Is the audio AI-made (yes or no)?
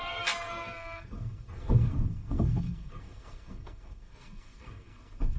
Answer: yes